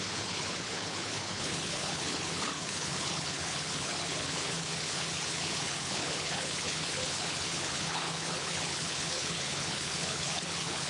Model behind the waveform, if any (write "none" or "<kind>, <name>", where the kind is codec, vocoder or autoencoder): codec, HILCodec